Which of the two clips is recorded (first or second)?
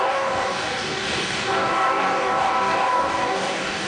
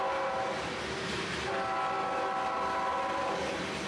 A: second